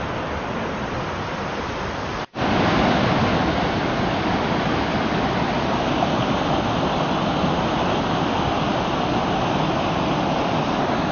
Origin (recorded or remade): recorded